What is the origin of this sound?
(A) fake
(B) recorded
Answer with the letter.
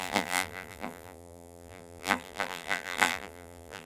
A